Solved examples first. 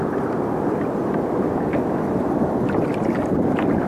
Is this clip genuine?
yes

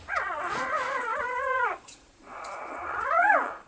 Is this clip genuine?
no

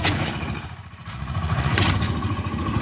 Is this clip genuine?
no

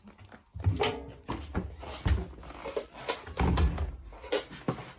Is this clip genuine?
yes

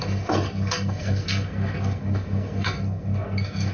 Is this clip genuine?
no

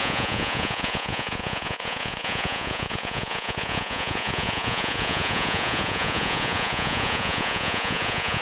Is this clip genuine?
no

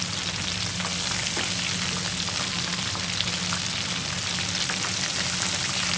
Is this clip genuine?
yes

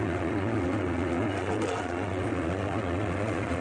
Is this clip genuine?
no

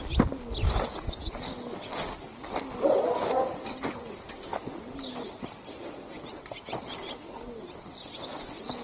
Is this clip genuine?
yes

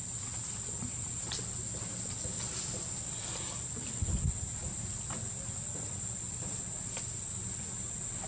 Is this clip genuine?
yes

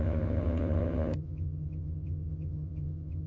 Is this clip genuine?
no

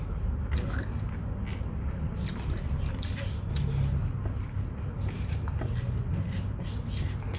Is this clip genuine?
yes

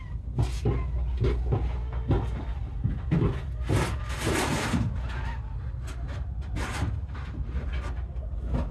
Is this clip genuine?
yes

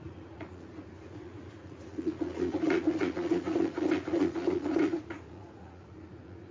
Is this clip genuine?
no